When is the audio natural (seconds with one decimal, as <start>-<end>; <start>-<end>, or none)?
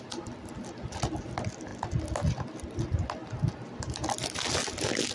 0.0-5.1